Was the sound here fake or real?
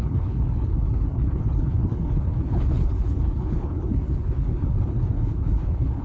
fake